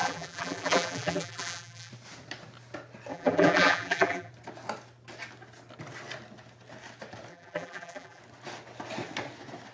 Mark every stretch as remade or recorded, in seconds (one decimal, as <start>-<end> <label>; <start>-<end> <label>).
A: 0.0-1.9 remade; 1.9-3.1 recorded; 3.1-4.3 remade; 4.3-7.3 recorded; 7.3-8.2 remade; 8.2-9.7 recorded